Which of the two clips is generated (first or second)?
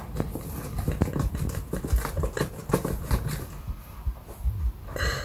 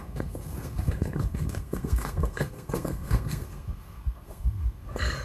second